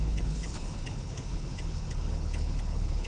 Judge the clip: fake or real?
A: fake